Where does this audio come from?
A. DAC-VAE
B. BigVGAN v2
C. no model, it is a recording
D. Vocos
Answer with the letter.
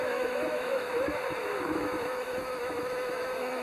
A